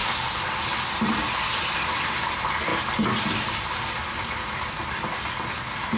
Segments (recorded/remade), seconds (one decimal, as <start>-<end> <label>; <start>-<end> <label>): 0.0-6.0 recorded